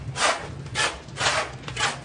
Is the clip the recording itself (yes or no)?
yes